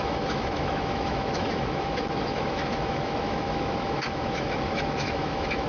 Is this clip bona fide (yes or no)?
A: no